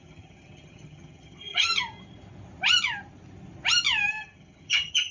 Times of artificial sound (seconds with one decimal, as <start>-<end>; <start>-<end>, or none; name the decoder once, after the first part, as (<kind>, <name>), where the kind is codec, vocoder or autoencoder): 0.0-1.7 (vocoder, HiFi-GAN); 4.1-5.1

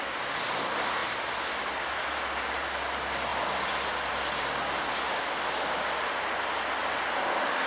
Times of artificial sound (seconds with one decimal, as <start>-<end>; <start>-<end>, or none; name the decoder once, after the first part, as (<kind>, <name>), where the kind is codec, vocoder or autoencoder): none